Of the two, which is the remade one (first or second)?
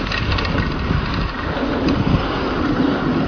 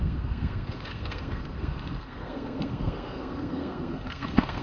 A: second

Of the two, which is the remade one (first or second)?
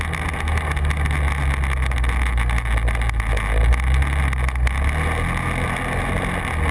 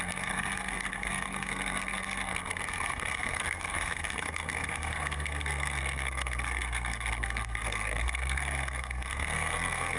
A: second